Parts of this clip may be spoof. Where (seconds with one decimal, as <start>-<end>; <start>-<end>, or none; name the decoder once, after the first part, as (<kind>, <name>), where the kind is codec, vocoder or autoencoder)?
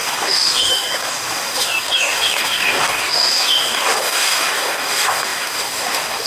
0.0-6.3 (codec, DAC)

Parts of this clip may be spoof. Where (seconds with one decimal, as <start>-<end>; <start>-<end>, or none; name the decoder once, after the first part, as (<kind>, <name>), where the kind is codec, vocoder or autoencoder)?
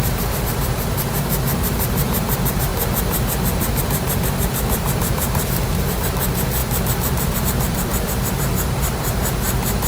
0.0-2.7 (vocoder, BigVGAN v2); 3.8-9.9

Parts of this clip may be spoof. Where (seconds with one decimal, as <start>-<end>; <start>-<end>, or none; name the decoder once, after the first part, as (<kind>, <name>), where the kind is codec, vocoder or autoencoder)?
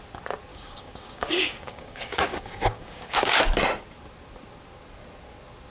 0.5-3.4 (codec, DAC)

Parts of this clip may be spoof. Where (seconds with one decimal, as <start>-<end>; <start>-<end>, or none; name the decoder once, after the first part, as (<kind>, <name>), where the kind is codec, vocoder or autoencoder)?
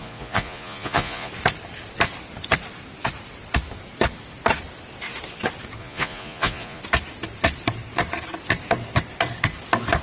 0.0-1.3 (vocoder, Vocos); 5.8-6.8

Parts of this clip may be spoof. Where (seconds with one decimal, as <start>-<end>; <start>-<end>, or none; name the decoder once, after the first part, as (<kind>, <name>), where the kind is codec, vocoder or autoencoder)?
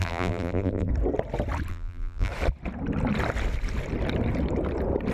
0.0-0.9 (vocoder, BigVGAN v2); 1.7-2.3